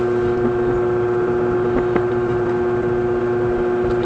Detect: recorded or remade recorded